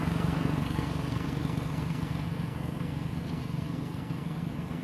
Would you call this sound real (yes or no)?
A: no